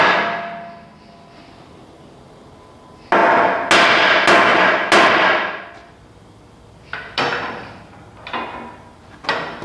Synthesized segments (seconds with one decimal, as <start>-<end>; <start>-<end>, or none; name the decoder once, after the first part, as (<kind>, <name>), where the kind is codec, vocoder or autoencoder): none